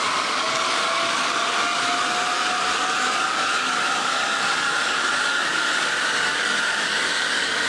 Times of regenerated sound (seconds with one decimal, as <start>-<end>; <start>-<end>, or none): 0.0-7.7